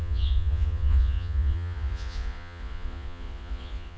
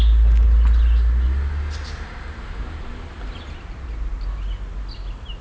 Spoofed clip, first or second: first